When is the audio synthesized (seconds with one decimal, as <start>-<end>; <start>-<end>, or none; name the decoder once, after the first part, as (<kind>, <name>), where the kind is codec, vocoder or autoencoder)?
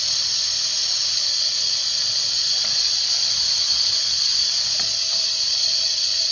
0.0-0.4 (vocoder, Vocos); 1.1-6.3